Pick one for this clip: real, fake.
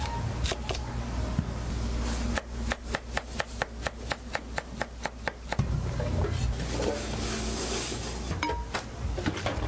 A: real